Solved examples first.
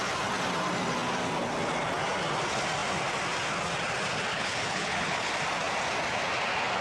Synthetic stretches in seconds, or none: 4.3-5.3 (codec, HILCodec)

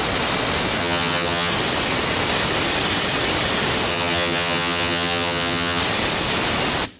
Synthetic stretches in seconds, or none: 0.8-1.5 (vocoder, HiFi-GAN); 3.9-5.8

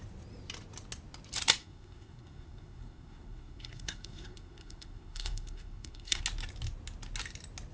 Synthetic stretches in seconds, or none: 1.6-6.2 (codec, SNAC)

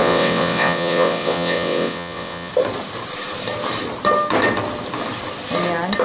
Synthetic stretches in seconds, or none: 0.0-2.5 (vocoder, WaveNeXt)

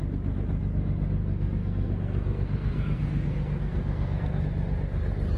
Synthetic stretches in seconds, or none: 1.2-4.4 (codec, SNAC)

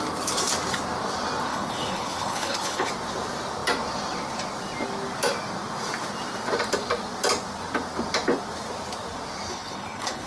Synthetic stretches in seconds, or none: 1.5-2.9 (codec, HILCodec); 9.5-10.3

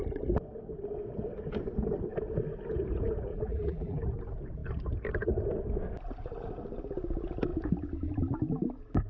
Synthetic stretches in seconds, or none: 3.3-4.0 (vocoder, BigVGAN v2)